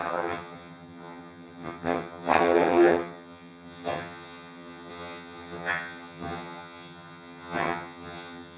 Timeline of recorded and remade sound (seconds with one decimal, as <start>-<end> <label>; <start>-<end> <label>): 0.0-8.6 remade